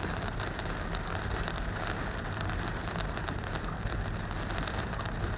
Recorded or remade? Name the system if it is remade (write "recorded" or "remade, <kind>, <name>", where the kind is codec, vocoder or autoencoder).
recorded